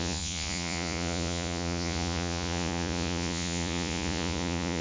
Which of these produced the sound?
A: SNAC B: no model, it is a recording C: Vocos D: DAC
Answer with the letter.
C